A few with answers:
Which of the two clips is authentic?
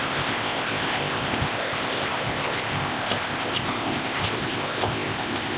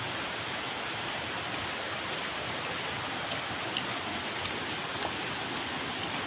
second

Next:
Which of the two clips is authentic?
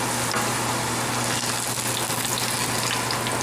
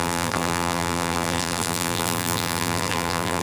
first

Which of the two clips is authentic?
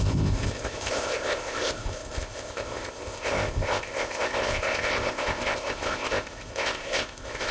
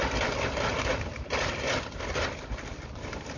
second